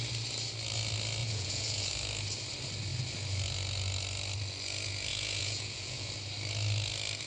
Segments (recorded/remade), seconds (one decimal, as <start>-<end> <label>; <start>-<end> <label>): 0.0-1.2 recorded; 1.2-1.9 remade; 1.9-5.1 recorded; 5.1-6.1 remade; 6.1-7.3 recorded